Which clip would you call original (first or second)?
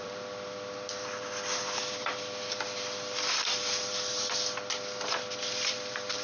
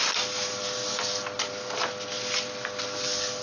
second